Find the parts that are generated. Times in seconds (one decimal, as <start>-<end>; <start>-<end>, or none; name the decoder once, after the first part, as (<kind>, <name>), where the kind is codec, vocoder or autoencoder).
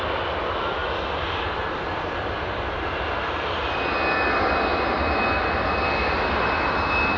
none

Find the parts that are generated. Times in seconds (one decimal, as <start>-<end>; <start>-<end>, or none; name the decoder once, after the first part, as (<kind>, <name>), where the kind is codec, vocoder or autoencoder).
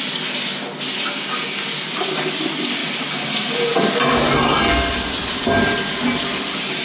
2.8-3.3 (vocoder, BigVGAN v2)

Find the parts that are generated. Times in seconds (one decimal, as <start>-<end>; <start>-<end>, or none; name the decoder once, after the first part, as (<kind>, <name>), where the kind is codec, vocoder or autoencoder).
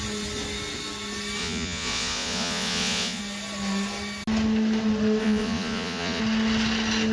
1.4-3.2 (vocoder, Vocos); 5.2-6.2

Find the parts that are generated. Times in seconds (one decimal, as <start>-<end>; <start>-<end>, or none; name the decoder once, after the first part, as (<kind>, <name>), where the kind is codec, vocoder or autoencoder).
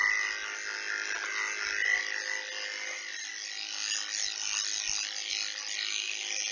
none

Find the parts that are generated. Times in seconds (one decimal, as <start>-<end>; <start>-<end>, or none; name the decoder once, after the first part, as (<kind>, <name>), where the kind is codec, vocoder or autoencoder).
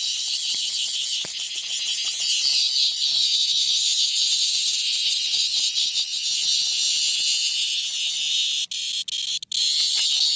none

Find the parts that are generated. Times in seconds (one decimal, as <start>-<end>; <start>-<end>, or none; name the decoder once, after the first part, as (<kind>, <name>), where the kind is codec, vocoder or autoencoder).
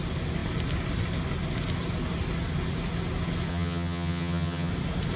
3.5-4.7 (vocoder, HiFi-GAN)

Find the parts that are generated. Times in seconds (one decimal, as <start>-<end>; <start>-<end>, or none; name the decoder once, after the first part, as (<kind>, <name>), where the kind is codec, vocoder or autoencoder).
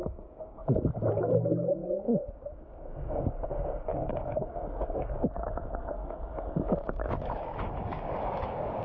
0.0-0.6 (codec, DAC); 1.1-8.8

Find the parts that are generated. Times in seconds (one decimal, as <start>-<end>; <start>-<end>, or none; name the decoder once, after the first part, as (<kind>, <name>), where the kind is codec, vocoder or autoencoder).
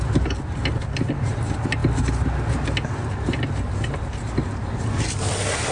none